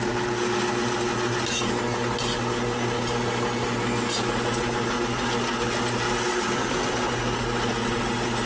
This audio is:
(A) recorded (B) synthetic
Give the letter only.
A